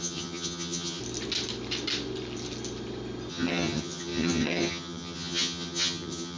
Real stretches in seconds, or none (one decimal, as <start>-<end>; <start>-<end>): 1.0-3.3